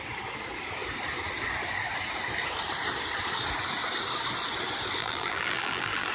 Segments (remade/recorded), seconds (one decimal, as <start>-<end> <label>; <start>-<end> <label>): 0.0-5.0 recorded; 5.0-6.1 remade